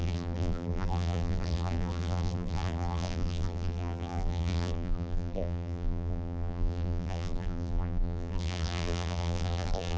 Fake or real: fake